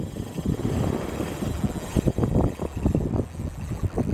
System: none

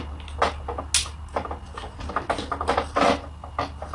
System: none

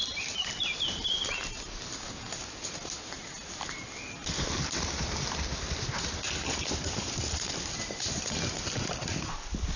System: none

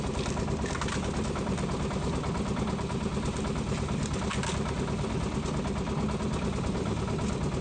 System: none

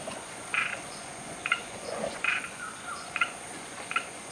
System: vocoder, Vocos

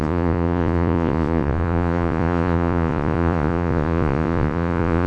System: vocoder, Vocos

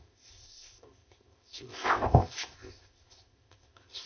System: codec, ZipCodec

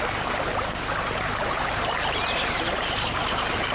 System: vocoder, BigVGAN v2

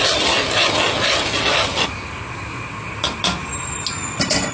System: none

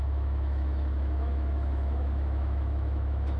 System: autoencoder, DAC-VAE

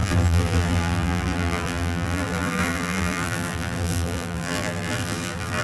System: vocoder, BigVGAN v2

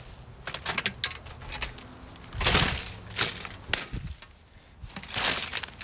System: none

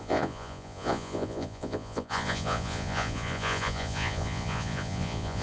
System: vocoder, Vocos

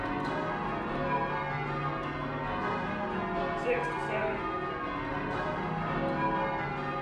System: none